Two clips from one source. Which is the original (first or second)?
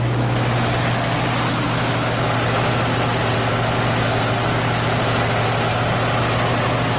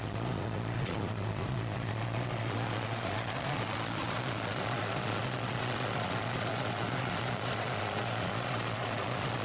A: first